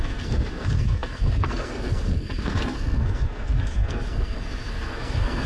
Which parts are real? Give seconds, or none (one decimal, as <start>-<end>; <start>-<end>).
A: none